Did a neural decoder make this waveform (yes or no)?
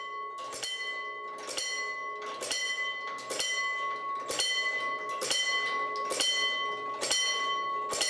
no